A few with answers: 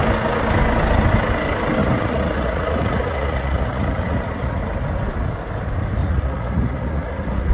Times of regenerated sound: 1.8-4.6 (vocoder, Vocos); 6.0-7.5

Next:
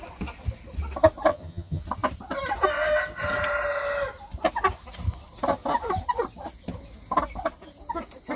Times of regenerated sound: 1.3-1.8 (vocoder, HiFi-GAN)

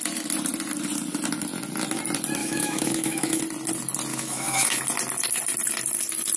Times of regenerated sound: 2.4-3.4 (autoencoder, DAC-VAE); 4.1-4.8

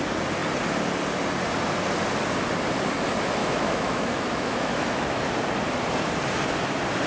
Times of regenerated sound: 3.4-5.2 (autoencoder, DAC-VAE)

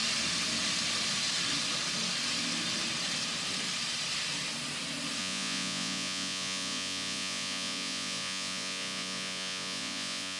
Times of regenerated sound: 5.2-10.4 (vocoder, Vocos)

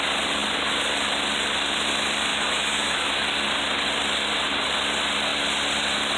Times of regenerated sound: 2.3-3.1 (autoencoder, DAC-VAE)

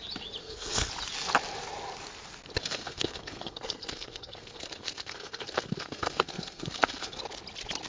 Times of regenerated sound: 0.4-0.9 (codec, SNAC); 2.6-7.2

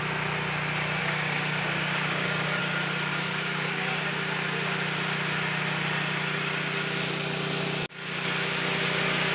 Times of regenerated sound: 1.0-2.6 (codec, DAC); 3.1-4.0